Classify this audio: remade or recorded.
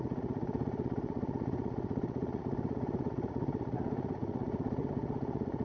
remade